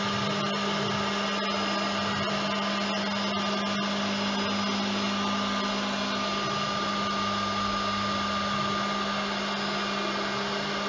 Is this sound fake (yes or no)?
no